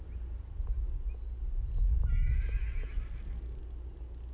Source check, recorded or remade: recorded